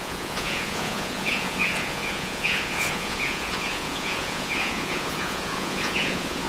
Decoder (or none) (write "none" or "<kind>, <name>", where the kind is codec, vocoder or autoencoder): vocoder, Vocos